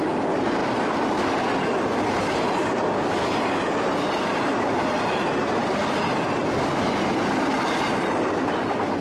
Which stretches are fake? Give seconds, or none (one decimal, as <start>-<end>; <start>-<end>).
none